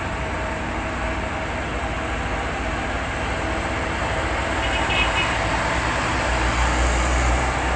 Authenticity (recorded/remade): recorded